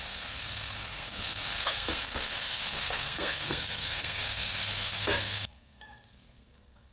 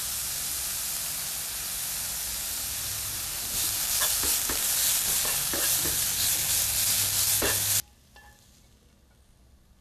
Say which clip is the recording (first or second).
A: second